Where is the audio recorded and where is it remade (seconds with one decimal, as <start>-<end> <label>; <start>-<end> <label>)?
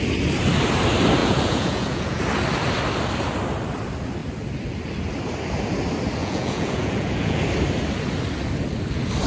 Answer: 0.0-1.2 recorded; 1.2-2.2 remade; 2.2-6.2 recorded; 6.2-7.4 remade; 7.4-9.3 recorded